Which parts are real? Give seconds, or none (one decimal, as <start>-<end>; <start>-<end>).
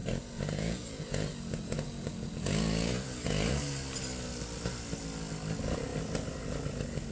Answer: 3.6-7.1